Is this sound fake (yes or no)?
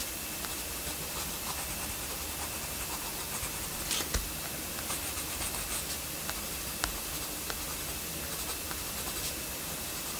no